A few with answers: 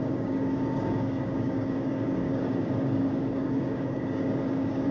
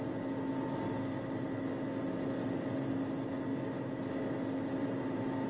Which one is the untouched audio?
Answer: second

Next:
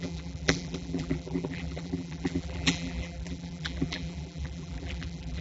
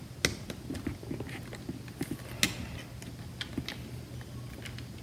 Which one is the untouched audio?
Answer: second